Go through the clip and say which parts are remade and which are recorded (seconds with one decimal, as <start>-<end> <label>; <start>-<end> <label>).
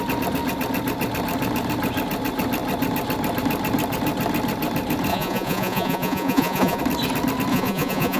0.0-5.1 recorded; 5.1-6.8 remade; 6.8-7.5 recorded; 7.5-8.2 remade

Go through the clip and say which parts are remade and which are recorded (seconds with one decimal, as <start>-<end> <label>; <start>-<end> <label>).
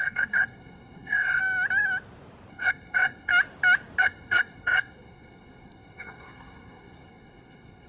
0.0-1.4 remade; 1.4-2.5 recorded; 2.5-3.3 remade; 3.3-4.0 recorded; 4.0-7.9 remade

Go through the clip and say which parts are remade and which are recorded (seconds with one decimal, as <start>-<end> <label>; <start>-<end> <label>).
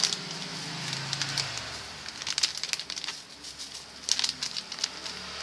0.0-5.4 recorded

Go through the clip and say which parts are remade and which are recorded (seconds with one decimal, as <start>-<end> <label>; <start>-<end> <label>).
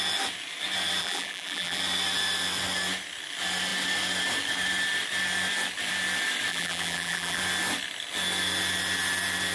0.0-1.0 recorded; 1.0-1.8 remade; 1.8-6.5 recorded; 6.5-7.4 remade; 7.4-9.5 recorded